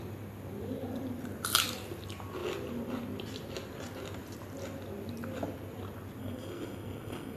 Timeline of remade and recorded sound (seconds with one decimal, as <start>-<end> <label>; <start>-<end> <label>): 0.0-6.2 recorded; 6.2-7.4 remade